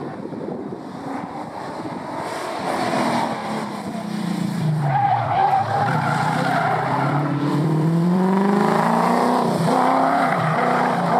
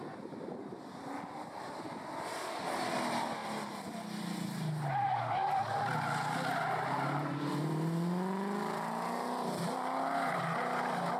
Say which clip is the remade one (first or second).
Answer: first